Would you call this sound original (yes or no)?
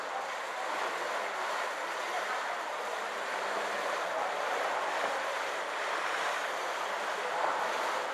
yes